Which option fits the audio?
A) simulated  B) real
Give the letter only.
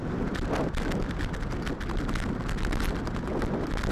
B